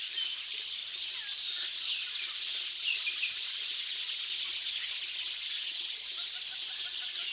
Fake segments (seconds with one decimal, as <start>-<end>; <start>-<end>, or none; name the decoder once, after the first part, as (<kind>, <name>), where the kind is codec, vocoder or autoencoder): 0.0-0.8 (vocoder, BigVGAN v2); 1.7-7.3